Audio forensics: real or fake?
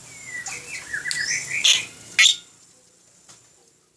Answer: real